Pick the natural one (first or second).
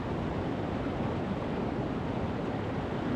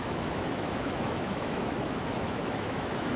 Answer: first